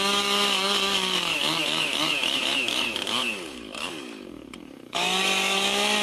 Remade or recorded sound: remade